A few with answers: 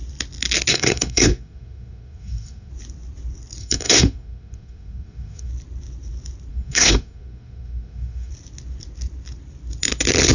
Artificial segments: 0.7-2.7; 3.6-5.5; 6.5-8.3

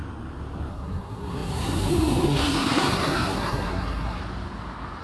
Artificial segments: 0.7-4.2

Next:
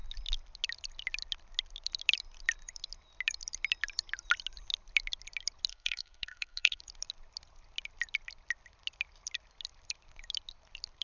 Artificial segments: 5.7-6.8

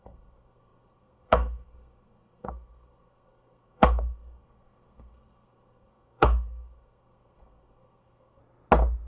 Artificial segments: 0.0-8.4

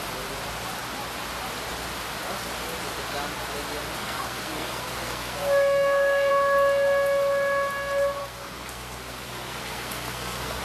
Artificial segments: 4.0-6.3; 8.2-10.6

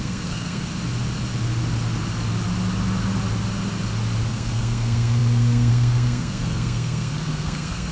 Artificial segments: 0.0-0.7; 4.3-7.9